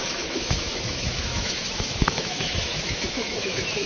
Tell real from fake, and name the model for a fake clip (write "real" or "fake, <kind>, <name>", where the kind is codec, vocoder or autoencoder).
fake, autoencoder, DAC-VAE